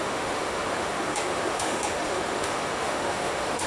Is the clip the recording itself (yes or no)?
no